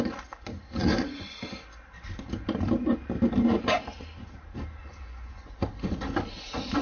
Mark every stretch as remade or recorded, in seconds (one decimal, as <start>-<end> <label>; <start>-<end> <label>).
0.0-0.8 recorded; 0.8-1.4 remade; 1.4-4.8 recorded; 4.8-5.5 remade; 5.5-6.8 recorded

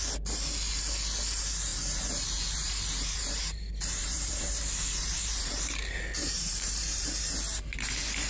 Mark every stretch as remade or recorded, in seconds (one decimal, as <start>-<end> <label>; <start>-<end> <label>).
0.0-1.7 recorded; 1.7-5.6 remade; 5.6-6.2 recorded; 6.2-7.2 remade; 7.2-8.3 recorded

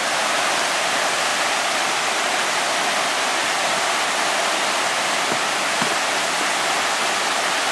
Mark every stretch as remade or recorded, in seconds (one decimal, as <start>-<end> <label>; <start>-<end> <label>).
0.0-7.7 recorded

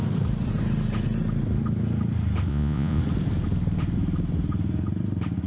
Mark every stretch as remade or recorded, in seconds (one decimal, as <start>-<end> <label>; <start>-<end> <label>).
0.0-2.5 recorded; 2.5-3.0 remade; 3.0-5.5 recorded

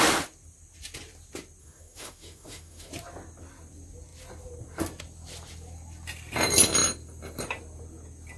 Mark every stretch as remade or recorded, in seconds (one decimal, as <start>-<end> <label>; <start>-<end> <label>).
0.0-1.6 recorded; 1.6-2.9 remade; 2.9-8.4 recorded

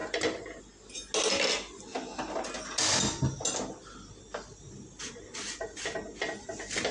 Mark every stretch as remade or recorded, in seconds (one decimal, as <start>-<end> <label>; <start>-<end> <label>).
0.0-6.9 recorded